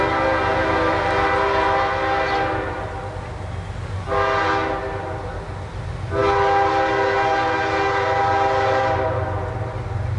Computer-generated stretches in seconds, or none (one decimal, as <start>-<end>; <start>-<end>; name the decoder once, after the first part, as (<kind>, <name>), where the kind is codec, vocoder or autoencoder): none